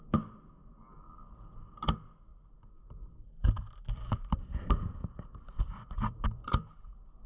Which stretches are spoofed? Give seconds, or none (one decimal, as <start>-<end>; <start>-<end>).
2.3-6.5